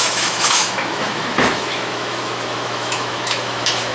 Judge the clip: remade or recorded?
remade